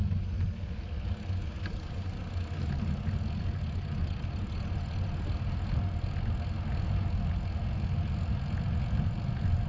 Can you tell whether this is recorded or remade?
recorded